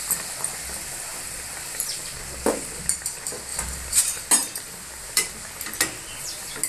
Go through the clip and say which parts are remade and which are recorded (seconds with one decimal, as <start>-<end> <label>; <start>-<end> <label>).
0.0-1.1 recorded; 1.1-2.8 remade; 2.8-3.5 recorded; 3.5-4.0 remade; 4.0-4.4 recorded; 4.4-5.4 remade; 5.4-6.7 recorded